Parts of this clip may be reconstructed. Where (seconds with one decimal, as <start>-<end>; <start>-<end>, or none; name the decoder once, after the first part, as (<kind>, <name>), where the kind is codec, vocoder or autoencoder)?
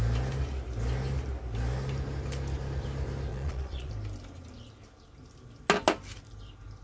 3.3-3.9 (vocoder, Vocos)